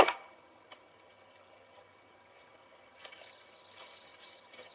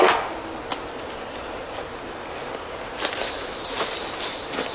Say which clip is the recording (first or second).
second